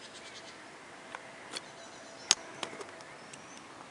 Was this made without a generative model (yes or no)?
yes